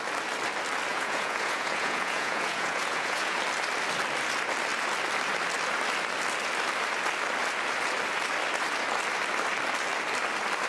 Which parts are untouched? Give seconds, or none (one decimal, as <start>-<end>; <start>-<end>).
0.0-0.9; 3.4-10.7